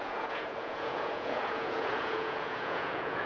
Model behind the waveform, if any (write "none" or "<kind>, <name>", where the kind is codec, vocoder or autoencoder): vocoder, Vocos